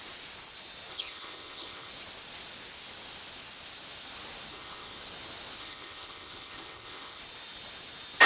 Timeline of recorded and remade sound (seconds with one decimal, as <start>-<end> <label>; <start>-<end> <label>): 0.0-0.9 recorded; 0.9-1.9 remade; 1.9-4.5 recorded; 4.5-5.0 remade; 5.0-5.6 recorded; 5.6-7.2 remade; 7.2-8.3 recorded